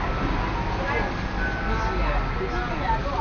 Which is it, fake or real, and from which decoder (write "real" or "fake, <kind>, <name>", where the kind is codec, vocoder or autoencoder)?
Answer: real